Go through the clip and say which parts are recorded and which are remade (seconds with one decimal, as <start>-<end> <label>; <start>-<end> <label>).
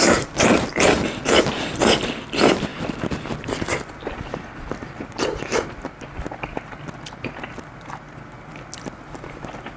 0.0-9.8 recorded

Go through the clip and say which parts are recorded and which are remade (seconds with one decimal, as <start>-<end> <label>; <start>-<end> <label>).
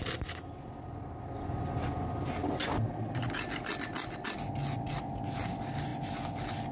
0.0-6.7 recorded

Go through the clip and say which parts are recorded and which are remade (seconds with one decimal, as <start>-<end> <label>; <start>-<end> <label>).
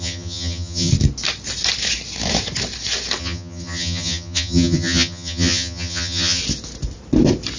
0.0-0.9 remade; 0.9-3.2 recorded; 3.2-6.4 remade; 6.4-7.6 recorded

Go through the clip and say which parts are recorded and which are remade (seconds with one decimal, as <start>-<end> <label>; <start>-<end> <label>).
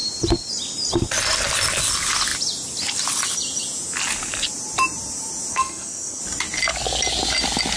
0.0-5.5 recorded; 5.5-6.2 remade; 6.2-7.8 recorded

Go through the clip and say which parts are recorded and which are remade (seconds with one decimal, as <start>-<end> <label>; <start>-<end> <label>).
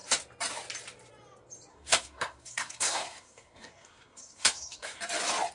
0.0-1.7 recorded; 1.7-5.0 remade; 5.0-5.5 recorded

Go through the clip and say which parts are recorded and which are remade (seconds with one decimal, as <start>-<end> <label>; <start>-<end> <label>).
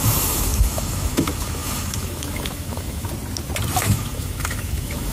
0.0-3.1 remade; 3.1-3.8 recorded; 3.8-5.1 remade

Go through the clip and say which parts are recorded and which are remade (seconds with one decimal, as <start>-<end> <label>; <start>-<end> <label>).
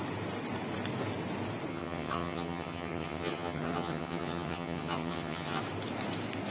0.0-1.7 recorded; 1.7-5.6 remade; 5.6-6.5 recorded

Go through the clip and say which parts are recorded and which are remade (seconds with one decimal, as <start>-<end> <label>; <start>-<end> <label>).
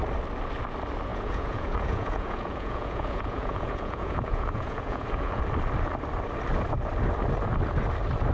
0.0-1.1 recorded; 1.1-5.4 remade; 5.4-8.3 recorded